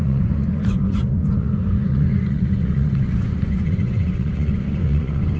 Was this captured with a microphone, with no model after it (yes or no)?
no